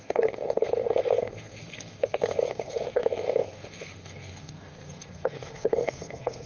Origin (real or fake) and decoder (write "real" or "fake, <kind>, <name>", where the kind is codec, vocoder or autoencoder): fake, codec, SNAC